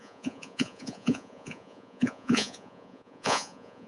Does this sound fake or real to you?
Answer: fake